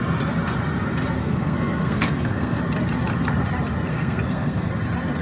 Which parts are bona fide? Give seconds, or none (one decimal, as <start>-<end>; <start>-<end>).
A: 0.0-1.2; 2.6-3.9; 4.7-5.2